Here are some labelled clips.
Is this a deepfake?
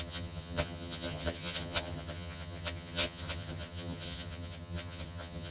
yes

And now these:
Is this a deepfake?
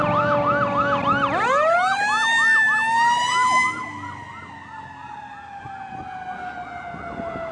no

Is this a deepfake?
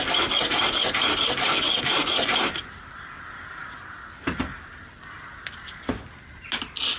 no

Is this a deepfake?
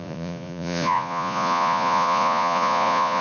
yes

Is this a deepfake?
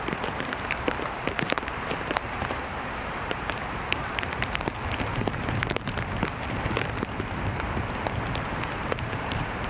yes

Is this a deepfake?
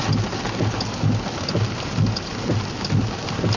no